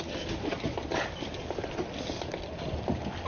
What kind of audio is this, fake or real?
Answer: real